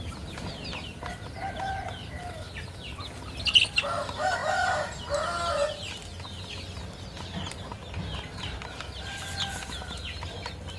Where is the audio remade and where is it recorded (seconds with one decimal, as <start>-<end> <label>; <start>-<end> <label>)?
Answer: 0.0-10.8 recorded